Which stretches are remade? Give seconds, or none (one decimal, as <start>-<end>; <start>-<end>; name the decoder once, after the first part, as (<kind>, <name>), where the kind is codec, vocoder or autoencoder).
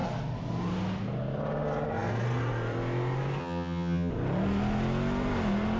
3.4-4.1 (vocoder, HiFi-GAN)